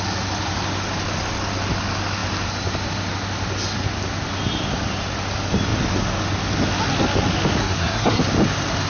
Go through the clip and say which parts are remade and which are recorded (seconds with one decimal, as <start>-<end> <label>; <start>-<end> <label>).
0.0-7.6 recorded; 7.6-8.2 remade; 8.2-8.9 recorded